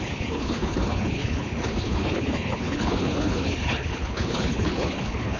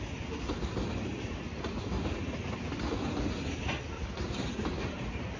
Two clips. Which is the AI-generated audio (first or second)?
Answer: first